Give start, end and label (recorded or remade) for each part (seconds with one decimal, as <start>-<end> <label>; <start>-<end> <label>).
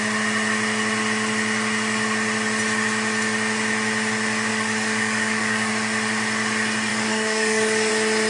0.0-4.5 recorded; 4.5-5.7 remade; 5.7-6.9 recorded; 6.9-7.9 remade; 7.9-8.3 recorded